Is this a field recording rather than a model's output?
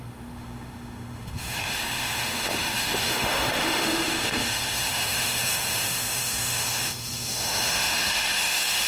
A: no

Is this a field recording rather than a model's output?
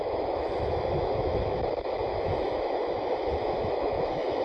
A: no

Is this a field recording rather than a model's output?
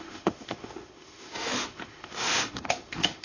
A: no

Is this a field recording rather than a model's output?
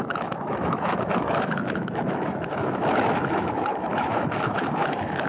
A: no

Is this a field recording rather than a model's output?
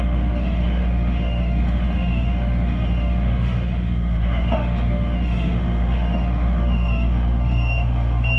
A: no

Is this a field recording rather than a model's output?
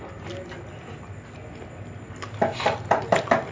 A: yes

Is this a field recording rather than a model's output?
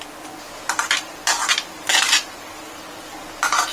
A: yes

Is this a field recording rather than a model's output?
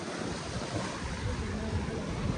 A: yes